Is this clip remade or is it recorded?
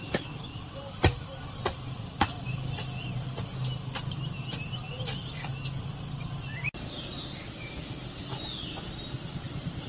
recorded